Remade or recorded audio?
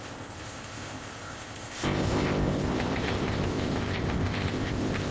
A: remade